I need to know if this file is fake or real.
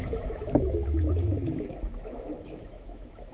fake